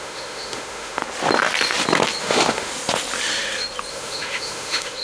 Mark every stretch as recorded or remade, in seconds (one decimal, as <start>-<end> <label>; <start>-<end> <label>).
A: 0.0-1.0 remade; 1.0-2.2 recorded; 2.2-2.7 remade; 2.7-3.9 recorded; 3.9-5.0 remade